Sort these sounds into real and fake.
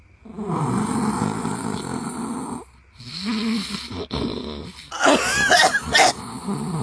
real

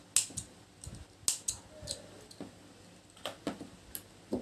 real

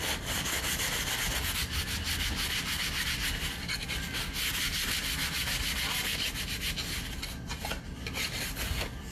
real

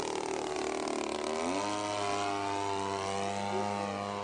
real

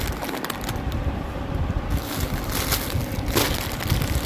real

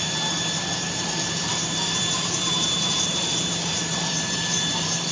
fake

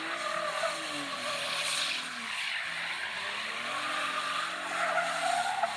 real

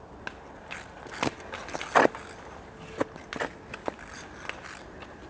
real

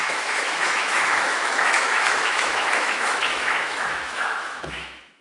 fake